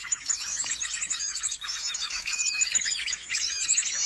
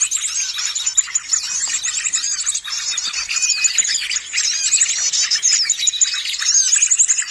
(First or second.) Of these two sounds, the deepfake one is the first